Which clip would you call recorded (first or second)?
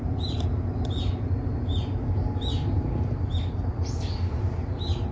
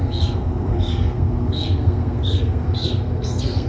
first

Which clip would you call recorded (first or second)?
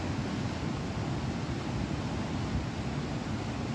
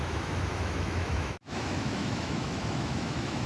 first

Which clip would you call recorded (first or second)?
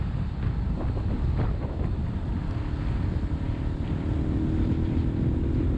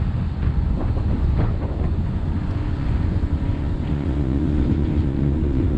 first